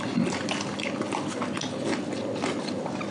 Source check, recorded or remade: recorded